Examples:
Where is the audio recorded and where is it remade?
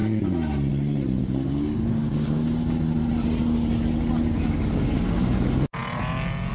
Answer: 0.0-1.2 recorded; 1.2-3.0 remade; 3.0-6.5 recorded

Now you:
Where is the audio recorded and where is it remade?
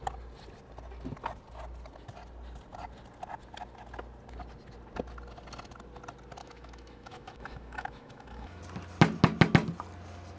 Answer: 0.0-6.4 recorded; 6.4-8.6 remade; 8.6-10.4 recorded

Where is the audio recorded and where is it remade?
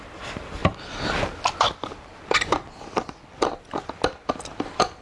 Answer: 0.0-0.6 remade; 0.6-3.6 recorded; 3.6-5.0 remade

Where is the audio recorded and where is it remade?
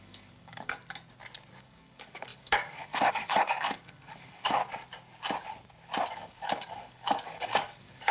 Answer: 0.0-0.8 remade; 0.8-1.5 recorded; 1.5-4.6 remade; 4.6-6.1 recorded; 6.1-8.1 remade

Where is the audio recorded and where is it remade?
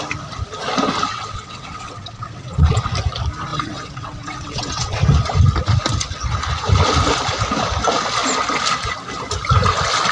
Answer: 0.0-1.1 recorded; 1.1-2.8 remade; 2.8-3.5 recorded; 3.5-5.0 remade; 5.0-10.1 recorded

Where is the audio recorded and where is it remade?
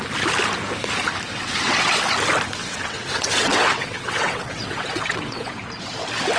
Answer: 0.0-1.3 recorded; 1.3-1.9 remade; 1.9-2.6 recorded; 2.6-5.5 remade; 5.5-6.4 recorded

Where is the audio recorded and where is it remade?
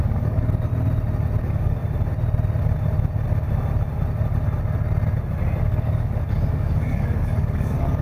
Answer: 0.0-0.7 remade; 0.7-1.4 recorded; 1.4-1.8 remade; 1.8-5.6 recorded; 5.6-8.0 remade